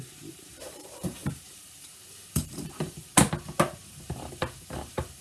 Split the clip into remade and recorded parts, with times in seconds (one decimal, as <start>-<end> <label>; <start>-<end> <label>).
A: 0.0-3.1 remade; 3.1-3.7 recorded; 3.7-5.2 remade